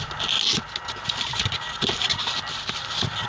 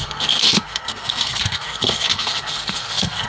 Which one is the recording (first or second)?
first